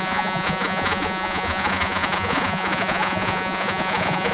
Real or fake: fake